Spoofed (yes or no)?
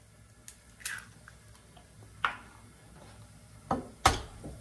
no